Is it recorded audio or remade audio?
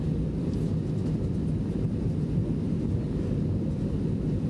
recorded